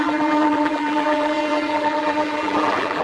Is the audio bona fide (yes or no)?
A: no